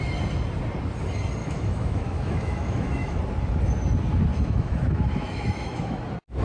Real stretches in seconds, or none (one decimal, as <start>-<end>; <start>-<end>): 0.0-1.4; 3.2-4.3; 6.0-6.4